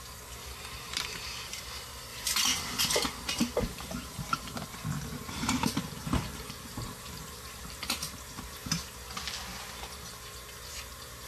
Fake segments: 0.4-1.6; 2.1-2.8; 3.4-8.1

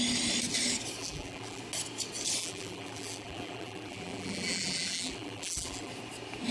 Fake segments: 1.0-1.6; 2.4-5.9

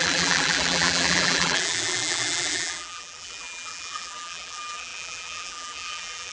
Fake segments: 0.0-6.3

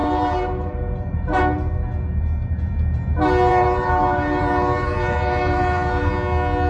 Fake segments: 0.0-1.4; 3.5-6.1

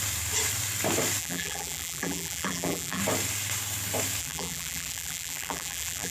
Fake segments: 1.2-3.0; 4.2-6.1